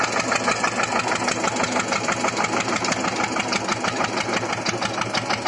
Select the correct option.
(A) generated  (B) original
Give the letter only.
B